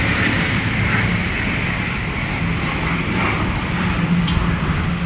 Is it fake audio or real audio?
real